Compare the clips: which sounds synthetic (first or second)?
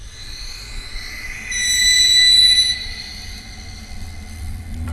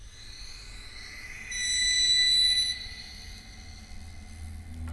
first